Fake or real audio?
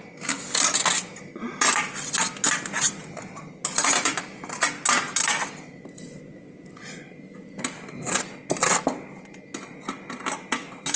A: real